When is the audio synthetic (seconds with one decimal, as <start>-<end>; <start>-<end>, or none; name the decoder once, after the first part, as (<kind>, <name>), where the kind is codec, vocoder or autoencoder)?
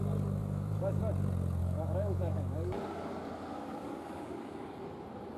0.4-1.0 (codec, DAC); 1.6-4.8